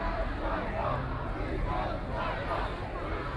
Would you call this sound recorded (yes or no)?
yes